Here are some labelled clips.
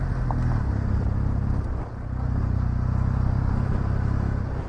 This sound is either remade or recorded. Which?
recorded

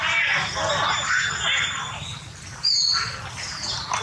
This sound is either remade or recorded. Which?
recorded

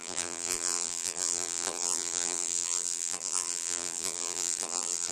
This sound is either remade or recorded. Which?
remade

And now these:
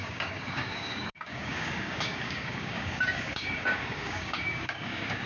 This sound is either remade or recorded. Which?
remade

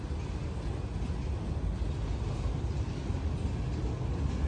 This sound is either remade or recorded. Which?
recorded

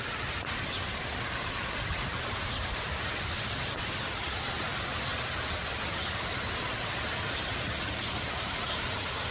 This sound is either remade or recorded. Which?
remade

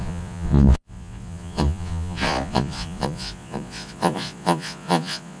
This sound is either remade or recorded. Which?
remade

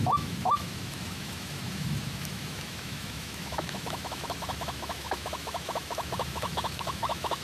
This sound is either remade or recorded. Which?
remade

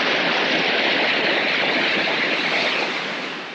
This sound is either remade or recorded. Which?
recorded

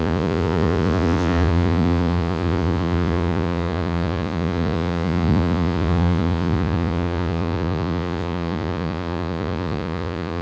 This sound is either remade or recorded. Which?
remade